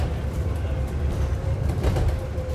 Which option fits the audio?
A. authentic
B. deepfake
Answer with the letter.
A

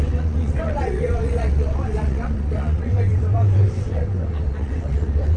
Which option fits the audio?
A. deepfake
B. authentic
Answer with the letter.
A